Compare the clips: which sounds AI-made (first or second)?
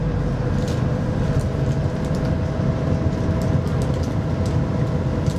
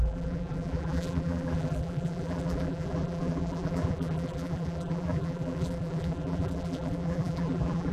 second